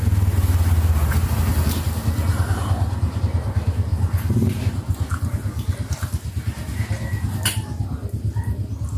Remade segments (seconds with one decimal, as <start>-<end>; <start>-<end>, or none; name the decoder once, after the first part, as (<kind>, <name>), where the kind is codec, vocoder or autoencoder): none